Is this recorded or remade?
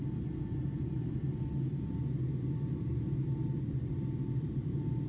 recorded